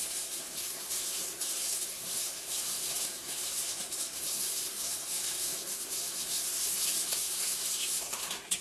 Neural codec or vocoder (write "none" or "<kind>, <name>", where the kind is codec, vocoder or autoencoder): codec, SNAC